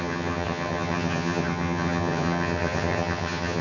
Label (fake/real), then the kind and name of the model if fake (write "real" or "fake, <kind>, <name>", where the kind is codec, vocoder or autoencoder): fake, vocoder, HiFi-GAN